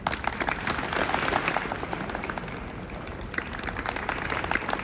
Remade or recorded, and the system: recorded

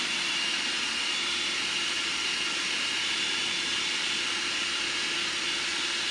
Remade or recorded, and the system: recorded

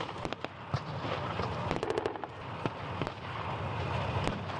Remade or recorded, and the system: recorded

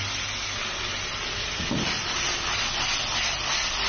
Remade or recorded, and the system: recorded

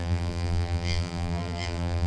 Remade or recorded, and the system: remade, vocoder, BigVGAN v2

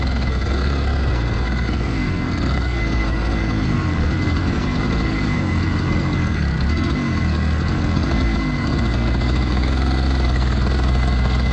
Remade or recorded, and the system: remade, codec, SNAC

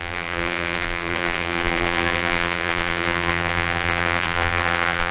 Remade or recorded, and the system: remade, vocoder, BigVGAN v2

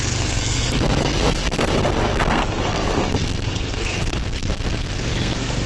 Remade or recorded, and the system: remade, codec, SNAC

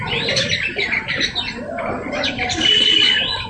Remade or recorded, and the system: remade, vocoder, BigVGAN v2